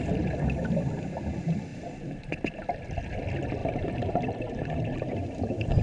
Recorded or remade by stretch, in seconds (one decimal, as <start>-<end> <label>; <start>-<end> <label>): 0.0-3.6 recorded; 3.6-5.8 remade